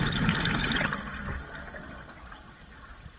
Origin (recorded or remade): recorded